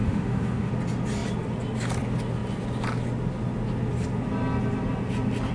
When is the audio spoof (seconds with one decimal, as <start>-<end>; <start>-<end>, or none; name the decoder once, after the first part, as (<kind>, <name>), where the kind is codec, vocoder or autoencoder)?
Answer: 0.0-0.7 (autoencoder, DAC-VAE)